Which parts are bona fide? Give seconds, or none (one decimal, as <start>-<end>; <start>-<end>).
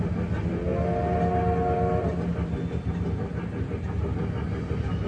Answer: 0.0-5.1